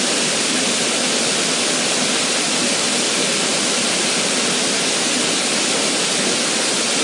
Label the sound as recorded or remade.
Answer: recorded